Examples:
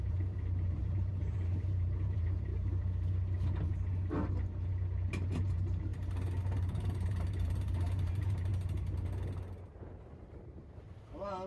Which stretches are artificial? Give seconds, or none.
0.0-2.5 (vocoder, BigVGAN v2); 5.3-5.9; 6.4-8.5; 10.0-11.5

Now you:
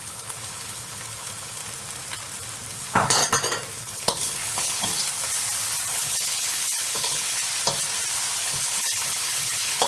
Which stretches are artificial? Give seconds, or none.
0.0-1.6 (codec, HILCodec); 2.7-3.2; 3.7-4.9; 5.9-7.4; 8.4-9.9

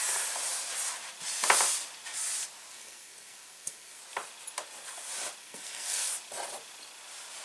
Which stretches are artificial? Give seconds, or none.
2.7-4.0 (codec, SNAC); 5.4-6.1

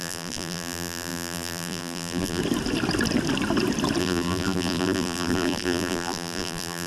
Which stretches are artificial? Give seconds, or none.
0.0-2.4 (vocoder, BigVGAN v2); 4.0-6.9

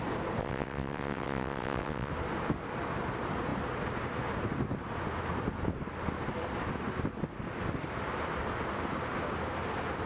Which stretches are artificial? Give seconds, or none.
0.4-2.1 (vocoder, WaveNeXt)

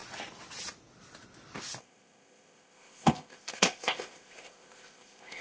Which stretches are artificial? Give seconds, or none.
1.8-5.4 (codec, ZipCodec)